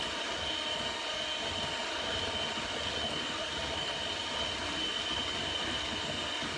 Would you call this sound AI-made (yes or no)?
no